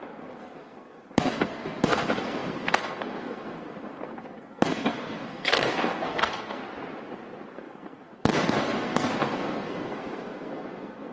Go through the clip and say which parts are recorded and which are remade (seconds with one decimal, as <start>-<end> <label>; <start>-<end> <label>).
0.0-6.6 remade; 6.6-7.5 recorded; 7.5-11.1 remade

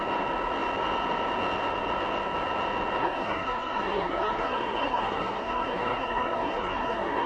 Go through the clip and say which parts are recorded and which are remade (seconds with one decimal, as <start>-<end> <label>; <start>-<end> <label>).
0.0-3.0 recorded; 3.0-7.3 remade